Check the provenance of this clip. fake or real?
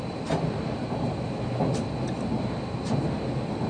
real